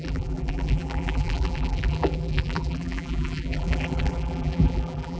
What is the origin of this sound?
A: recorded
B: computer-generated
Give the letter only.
B